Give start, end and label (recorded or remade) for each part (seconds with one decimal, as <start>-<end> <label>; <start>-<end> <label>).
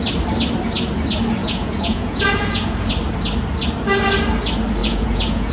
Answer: 0.0-1.4 recorded; 1.4-2.9 remade; 2.9-4.8 recorded; 4.8-5.5 remade